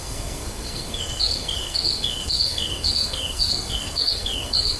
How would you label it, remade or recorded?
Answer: remade